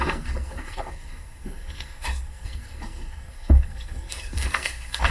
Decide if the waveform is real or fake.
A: fake